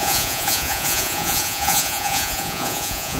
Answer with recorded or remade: remade